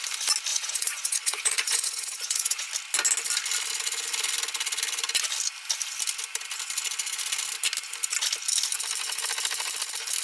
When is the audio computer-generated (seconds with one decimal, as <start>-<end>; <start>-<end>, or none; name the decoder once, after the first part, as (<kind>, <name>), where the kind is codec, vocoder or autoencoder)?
0.5-2.7 (vocoder, Vocos)

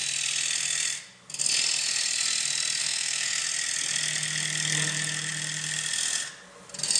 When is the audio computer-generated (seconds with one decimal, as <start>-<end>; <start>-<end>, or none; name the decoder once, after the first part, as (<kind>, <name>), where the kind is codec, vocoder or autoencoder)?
2.8-3.4 (codec, SNAC)

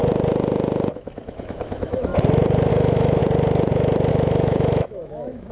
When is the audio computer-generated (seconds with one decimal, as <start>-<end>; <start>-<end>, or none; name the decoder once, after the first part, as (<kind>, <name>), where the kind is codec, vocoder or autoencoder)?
0.9-2.1 (autoencoder, DAC-VAE); 2.7-3.2; 4.1-5.5

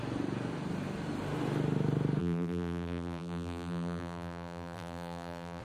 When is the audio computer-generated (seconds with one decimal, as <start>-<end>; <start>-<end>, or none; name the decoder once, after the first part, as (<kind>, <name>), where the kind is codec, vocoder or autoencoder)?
2.2-5.6 (vocoder, BigVGAN v2)

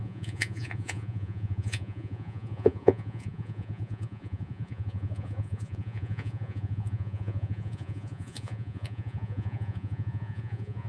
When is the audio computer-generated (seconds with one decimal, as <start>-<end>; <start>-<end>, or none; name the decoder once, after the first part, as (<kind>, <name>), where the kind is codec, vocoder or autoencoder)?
0.0-10.9 (vocoder, Vocos)

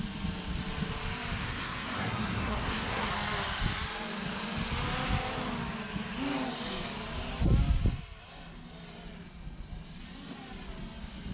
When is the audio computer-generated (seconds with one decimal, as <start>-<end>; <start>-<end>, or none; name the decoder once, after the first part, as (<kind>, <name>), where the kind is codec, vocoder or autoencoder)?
1.4-3.1 (codec, SNAC)

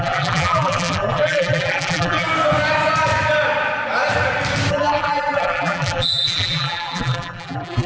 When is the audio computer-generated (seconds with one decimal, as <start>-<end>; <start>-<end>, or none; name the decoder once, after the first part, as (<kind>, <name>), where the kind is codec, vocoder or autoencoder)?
0.0-2.3 (vocoder, BigVGAN v2); 4.7-7.9

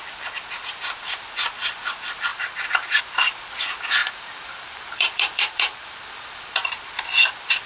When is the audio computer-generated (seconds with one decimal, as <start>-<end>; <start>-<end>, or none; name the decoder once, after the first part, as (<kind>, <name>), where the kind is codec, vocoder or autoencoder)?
2.3-3.0 (vocoder, BigVGAN v2); 4.0-6.8